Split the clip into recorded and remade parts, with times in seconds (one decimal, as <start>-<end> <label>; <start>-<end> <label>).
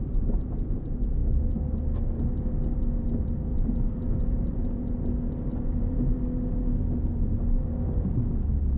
0.0-3.5 recorded; 3.5-4.8 remade; 4.8-5.5 recorded; 5.5-6.2 remade; 6.2-8.8 recorded